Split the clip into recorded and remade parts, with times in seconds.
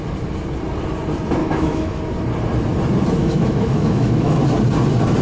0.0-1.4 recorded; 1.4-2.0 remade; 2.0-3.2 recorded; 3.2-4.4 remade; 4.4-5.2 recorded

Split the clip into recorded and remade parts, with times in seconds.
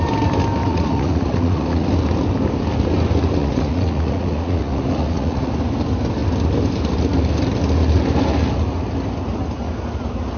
0.0-0.6 recorded; 0.6-1.9 remade; 1.9-3.4 recorded; 3.4-5.5 remade; 5.5-10.4 recorded